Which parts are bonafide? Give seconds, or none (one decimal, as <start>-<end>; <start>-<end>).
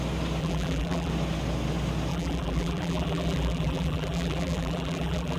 0.0-0.4; 1.1-2.1